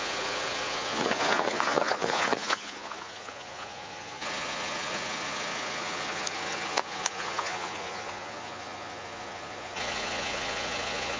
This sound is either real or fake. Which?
fake